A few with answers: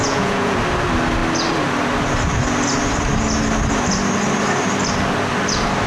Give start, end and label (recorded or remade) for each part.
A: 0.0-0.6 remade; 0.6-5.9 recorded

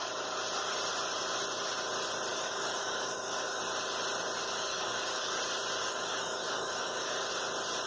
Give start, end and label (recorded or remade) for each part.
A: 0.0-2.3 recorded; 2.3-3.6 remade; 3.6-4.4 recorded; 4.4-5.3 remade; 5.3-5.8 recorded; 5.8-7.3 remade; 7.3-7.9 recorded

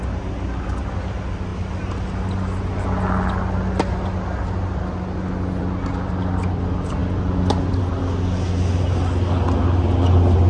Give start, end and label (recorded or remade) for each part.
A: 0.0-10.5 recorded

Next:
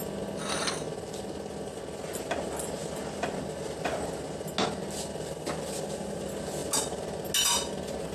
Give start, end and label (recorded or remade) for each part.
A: 0.0-8.1 recorded

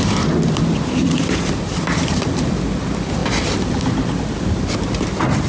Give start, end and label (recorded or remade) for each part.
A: 0.0-0.6 remade; 0.6-1.0 recorded; 1.0-2.5 remade; 2.5-5.5 recorded